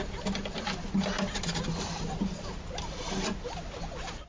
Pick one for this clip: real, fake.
real